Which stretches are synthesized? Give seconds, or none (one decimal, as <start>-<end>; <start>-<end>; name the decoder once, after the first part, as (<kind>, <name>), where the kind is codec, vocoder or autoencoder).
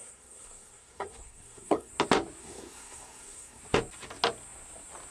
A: 0.0-1.9 (codec, SNAC); 2.4-3.6